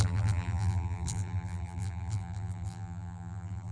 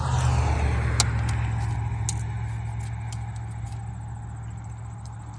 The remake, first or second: first